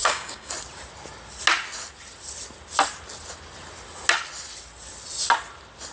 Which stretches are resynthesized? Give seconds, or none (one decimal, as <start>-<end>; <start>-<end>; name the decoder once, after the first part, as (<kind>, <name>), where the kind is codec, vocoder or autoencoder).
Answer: 0.0-0.5 (codec, DAC)